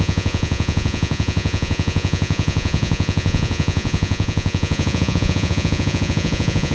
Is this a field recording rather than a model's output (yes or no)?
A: no